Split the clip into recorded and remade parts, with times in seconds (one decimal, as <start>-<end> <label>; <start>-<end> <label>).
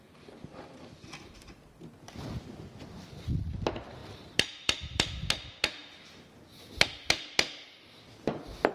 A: 0.0-4.0 recorded; 4.0-5.1 remade; 5.1-8.7 recorded